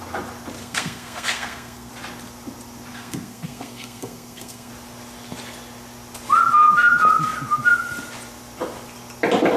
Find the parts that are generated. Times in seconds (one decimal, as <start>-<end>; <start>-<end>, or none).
0.6-1.9; 2.9-4.7